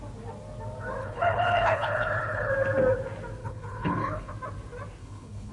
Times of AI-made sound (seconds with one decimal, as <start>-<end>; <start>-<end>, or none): 1.0-2.5; 3.4-4.3; 5.0-5.5